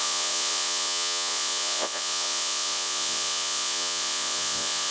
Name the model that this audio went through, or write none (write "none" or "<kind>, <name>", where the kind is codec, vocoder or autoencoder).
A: vocoder, Vocos